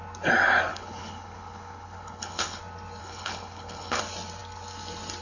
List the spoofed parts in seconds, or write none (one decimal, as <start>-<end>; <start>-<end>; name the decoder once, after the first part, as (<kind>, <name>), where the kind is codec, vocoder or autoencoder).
0.7-2.6 (codec, HILCodec); 3.0-4.0